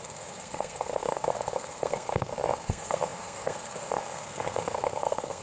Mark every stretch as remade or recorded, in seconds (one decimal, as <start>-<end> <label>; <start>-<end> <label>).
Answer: 0.0-5.4 remade